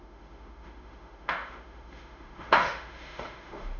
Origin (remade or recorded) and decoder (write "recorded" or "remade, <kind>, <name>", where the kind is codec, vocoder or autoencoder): remade, autoencoder, DAC-VAE